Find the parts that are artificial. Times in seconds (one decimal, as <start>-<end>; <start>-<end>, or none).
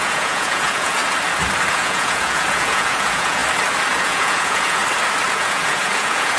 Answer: 0.0-1.0; 1.7-3.4; 4.0-4.8; 5.3-6.4